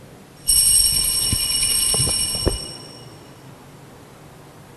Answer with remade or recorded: recorded